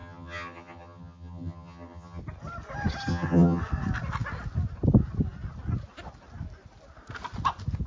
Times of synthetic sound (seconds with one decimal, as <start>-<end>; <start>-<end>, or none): 0.0-2.2; 3.1-3.6